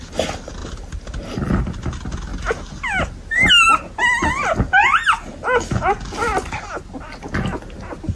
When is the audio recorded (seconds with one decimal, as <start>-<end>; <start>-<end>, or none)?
0.0-8.2